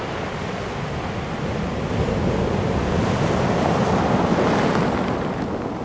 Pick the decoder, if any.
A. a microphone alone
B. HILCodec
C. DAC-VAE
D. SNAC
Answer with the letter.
A